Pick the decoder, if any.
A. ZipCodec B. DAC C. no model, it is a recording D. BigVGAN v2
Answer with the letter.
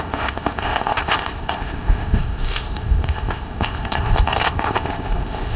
A